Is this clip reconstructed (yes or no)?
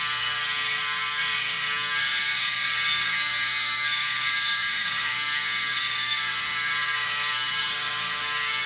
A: yes